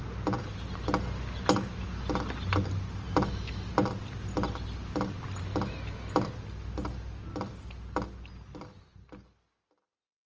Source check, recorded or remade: recorded